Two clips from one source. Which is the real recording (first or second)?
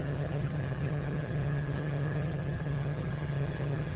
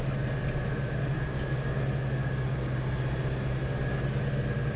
second